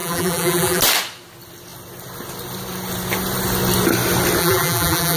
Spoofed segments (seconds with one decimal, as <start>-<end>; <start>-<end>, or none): 0.0-0.8; 4.4-5.2